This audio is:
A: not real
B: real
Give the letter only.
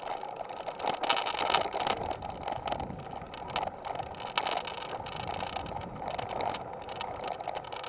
B